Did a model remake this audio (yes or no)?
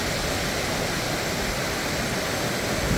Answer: no